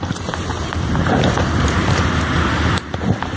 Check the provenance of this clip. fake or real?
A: fake